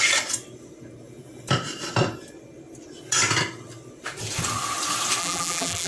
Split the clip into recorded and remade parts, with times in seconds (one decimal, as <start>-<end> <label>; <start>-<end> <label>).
0.0-5.2 recorded; 5.2-5.9 remade